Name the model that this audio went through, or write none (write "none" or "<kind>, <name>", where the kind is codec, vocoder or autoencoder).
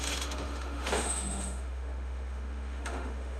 autoencoder, DAC-VAE